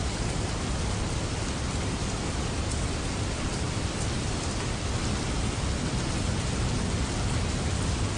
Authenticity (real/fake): real